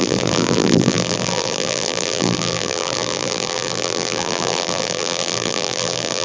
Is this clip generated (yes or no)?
yes